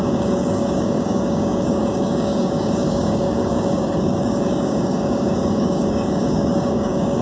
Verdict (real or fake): fake